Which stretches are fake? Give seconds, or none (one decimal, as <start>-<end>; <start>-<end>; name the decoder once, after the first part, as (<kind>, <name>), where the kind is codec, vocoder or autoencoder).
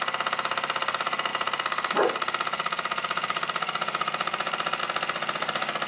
1.3-4.8 (vocoder, BigVGAN v2)